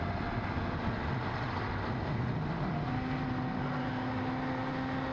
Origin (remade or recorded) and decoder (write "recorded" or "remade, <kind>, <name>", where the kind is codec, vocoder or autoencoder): recorded